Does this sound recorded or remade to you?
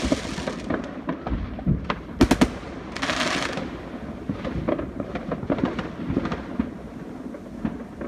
recorded